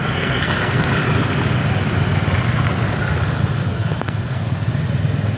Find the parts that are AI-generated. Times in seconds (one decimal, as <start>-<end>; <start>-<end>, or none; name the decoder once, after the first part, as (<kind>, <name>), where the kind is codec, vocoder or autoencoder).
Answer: 0.0-0.9 (codec, SNAC); 3.7-4.7